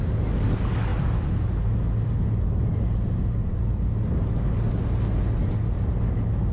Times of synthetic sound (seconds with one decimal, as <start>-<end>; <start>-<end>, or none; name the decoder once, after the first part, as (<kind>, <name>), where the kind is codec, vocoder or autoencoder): none